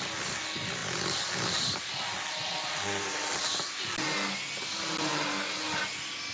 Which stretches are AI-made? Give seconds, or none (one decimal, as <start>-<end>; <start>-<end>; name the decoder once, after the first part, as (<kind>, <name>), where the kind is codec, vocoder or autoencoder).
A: none